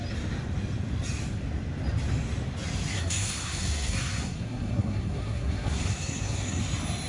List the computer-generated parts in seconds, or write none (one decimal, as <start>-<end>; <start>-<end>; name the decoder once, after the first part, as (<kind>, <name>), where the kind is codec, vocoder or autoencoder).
2.9-6.6 (codec, SNAC)